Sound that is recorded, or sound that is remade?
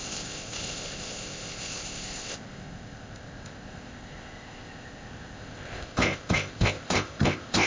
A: remade